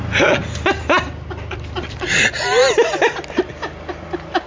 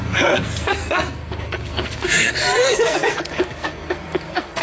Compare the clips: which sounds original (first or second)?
first